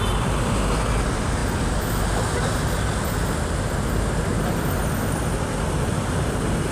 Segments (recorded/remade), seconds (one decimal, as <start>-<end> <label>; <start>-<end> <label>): 0.0-6.7 recorded